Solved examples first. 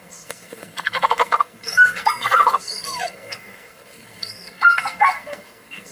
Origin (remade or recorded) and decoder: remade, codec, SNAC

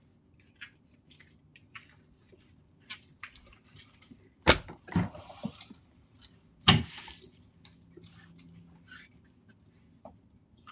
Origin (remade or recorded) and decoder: recorded